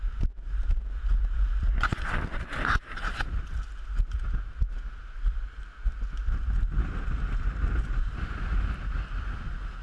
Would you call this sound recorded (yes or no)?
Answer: yes